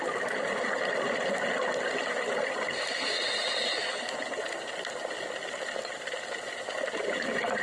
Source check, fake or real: real